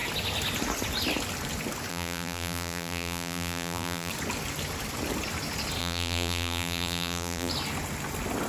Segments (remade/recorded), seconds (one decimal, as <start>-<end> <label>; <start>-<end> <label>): 0.0-1.9 recorded; 1.9-4.1 remade; 4.1-5.8 recorded; 5.8-7.5 remade; 7.5-8.5 recorded